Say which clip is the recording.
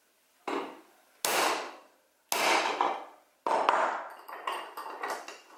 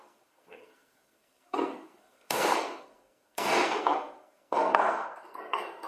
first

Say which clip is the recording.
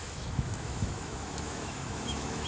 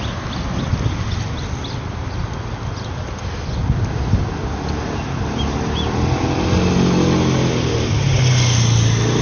second